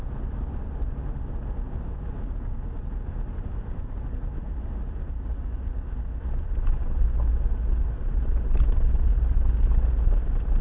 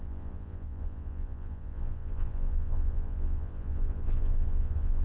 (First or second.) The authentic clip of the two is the first